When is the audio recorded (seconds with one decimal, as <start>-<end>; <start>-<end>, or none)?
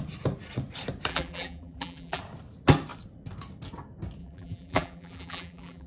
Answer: 0.0-1.1; 2.2-4.2